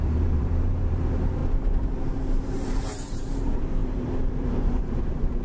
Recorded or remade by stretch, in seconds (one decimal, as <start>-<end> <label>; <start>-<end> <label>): 0.0-1.4 remade; 1.4-2.1 recorded; 2.1-5.4 remade